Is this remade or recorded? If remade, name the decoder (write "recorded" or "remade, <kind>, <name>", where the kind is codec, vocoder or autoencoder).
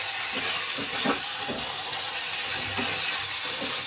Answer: recorded